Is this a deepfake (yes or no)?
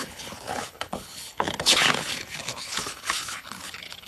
yes